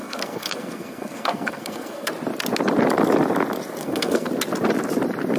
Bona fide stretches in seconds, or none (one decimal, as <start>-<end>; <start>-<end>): 2.1-3.8; 4.3-5.4